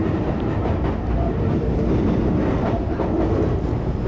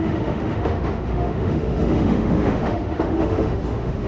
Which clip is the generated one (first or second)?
second